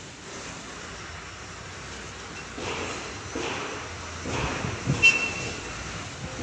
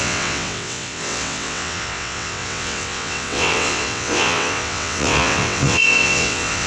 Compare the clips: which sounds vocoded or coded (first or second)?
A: second